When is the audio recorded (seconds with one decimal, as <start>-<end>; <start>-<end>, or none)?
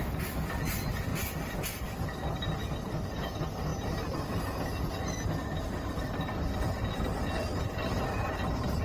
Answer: 0.0-8.8